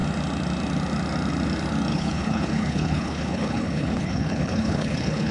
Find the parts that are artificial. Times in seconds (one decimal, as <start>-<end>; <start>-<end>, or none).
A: 1.9-5.3